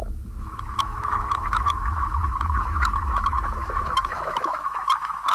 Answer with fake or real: fake